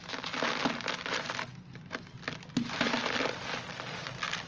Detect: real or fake real